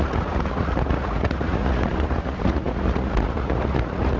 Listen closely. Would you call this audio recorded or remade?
remade